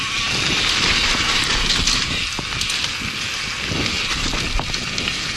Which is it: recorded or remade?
recorded